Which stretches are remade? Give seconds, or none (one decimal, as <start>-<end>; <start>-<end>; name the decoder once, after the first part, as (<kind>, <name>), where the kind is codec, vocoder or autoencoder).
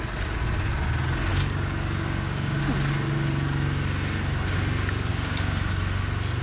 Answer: 1.3-2.6 (codec, DAC); 5.1-5.7